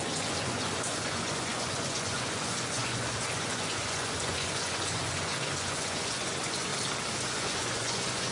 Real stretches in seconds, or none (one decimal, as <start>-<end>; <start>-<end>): 6.7-7.2